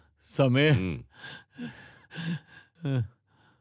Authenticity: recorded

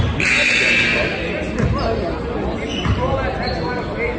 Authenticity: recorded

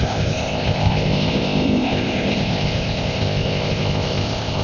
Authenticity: remade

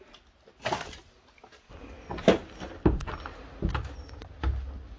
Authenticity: recorded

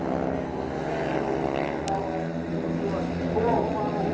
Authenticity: recorded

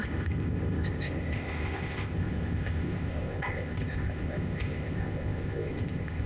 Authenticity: remade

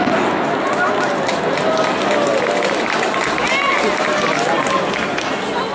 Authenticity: recorded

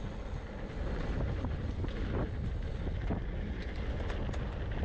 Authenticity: recorded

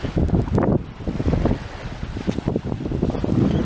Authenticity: recorded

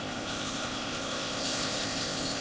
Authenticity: remade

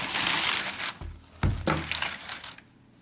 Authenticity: recorded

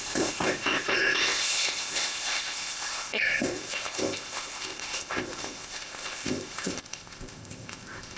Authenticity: remade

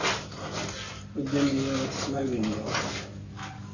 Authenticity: recorded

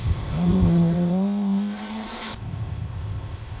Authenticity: remade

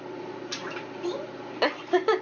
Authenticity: recorded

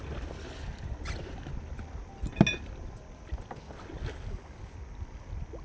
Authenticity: recorded